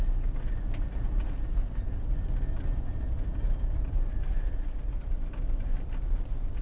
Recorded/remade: recorded